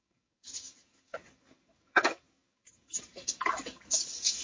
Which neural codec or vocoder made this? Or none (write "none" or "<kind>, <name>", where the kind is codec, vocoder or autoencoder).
codec, DAC